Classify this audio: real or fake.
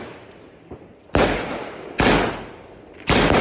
real